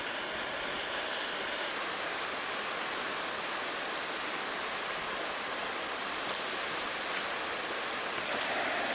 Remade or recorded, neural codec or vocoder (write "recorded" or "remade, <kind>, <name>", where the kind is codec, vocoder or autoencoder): recorded